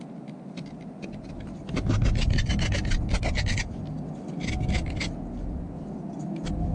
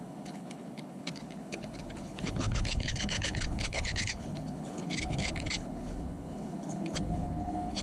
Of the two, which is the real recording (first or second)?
first